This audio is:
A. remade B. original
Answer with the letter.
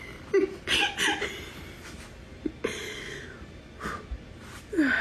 B